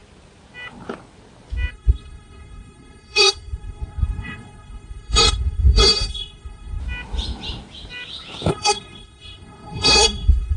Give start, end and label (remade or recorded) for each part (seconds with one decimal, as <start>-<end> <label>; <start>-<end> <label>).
0.0-1.7 recorded; 1.7-6.8 remade; 6.8-8.5 recorded; 8.5-10.6 remade